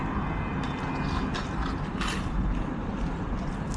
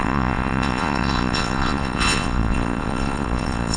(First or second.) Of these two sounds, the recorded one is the first